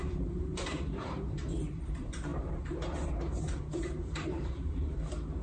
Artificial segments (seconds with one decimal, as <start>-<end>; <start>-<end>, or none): 0.0-0.5; 1.0-5.4